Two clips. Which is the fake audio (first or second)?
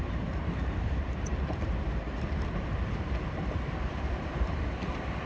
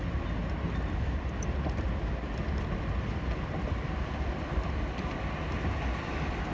first